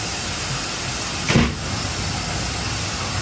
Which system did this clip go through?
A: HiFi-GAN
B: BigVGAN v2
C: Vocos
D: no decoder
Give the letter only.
D